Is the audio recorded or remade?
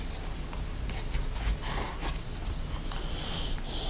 recorded